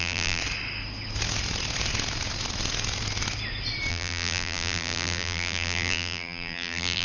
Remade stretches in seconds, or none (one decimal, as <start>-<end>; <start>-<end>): 0.0-0.4; 3.9-7.0